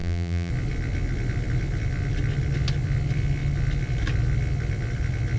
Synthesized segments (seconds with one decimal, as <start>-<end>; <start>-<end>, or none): 0.0-0.5